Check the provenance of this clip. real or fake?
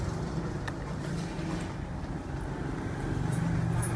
real